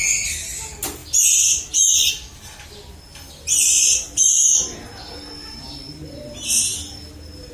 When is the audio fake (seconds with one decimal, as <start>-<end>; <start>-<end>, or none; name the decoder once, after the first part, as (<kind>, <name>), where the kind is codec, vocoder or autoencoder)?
none